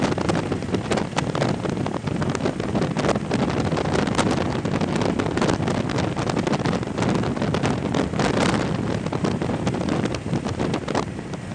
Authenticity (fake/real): real